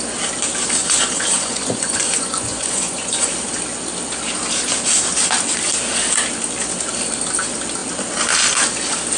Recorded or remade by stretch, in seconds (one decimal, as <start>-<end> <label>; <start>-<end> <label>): 0.0-0.8 recorded; 0.8-3.3 remade; 3.3-9.2 recorded